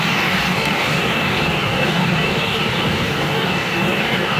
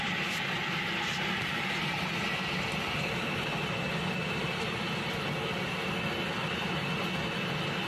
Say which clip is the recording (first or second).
second